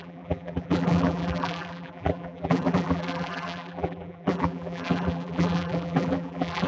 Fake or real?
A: fake